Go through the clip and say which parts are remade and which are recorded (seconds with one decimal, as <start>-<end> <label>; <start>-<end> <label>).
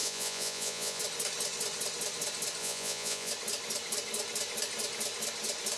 0.0-1.0 remade; 1.0-2.6 recorded; 2.6-3.3 remade; 3.3-5.8 recorded